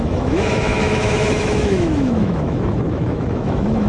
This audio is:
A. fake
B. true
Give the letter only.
A